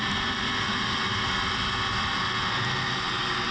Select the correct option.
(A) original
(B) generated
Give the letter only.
A